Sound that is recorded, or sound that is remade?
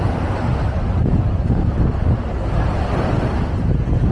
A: recorded